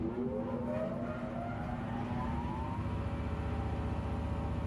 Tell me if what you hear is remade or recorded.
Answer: recorded